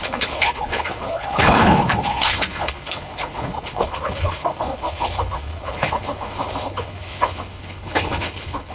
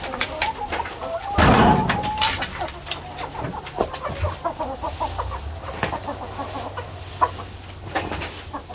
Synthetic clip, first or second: first